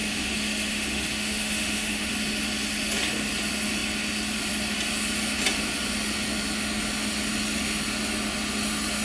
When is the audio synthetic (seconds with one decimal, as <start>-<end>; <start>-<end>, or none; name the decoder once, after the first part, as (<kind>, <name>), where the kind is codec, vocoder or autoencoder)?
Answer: 0.0-2.1 (autoencoder, DAC-VAE)